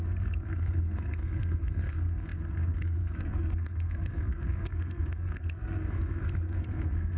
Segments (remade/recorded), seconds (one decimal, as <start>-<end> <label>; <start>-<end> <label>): 0.0-7.2 remade

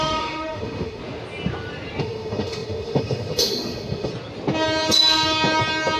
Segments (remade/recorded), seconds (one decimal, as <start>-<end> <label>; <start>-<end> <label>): 0.0-1.0 remade; 1.0-2.0 recorded; 2.0-4.1 remade; 4.1-6.0 recorded

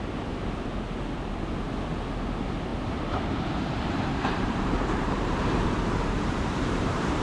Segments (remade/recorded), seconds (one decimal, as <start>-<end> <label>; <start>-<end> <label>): 0.0-2.7 recorded; 2.7-7.2 remade

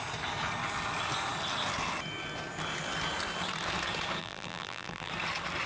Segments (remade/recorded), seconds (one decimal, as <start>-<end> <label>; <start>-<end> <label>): 0.0-4.2 recorded; 4.2-5.1 remade; 5.1-5.7 recorded

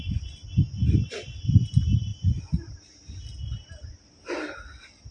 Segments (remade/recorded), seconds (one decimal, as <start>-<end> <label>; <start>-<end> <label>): 0.0-5.1 recorded